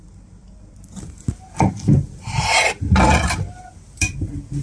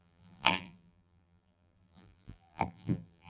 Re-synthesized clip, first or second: second